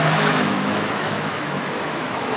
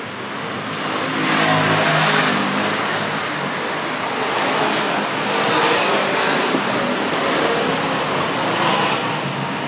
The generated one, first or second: first